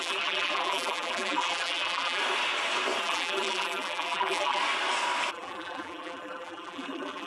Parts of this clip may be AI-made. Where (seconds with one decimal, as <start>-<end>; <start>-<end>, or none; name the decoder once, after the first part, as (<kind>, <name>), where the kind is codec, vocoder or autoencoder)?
0.0-2.2 (vocoder, BigVGAN v2); 3.0-4.6; 5.3-7.3